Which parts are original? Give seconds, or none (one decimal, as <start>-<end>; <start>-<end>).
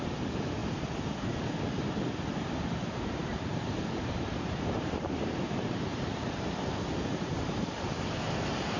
none